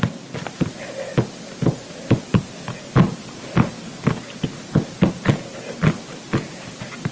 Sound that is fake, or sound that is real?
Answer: real